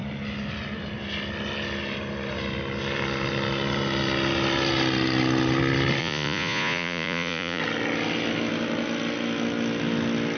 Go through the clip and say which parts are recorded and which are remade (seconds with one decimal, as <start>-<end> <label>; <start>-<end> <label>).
0.0-6.0 recorded; 6.0-7.6 remade; 7.6-10.4 recorded